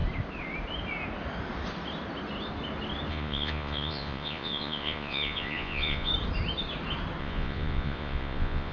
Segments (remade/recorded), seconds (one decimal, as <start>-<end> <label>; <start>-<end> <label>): 0.0-3.1 recorded; 3.1-6.1 remade; 6.1-7.2 recorded; 7.2-8.7 remade